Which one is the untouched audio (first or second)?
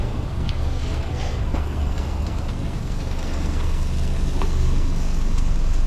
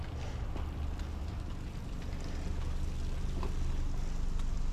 second